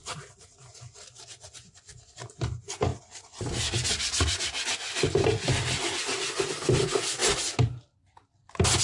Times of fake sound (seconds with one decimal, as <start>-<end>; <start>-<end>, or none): none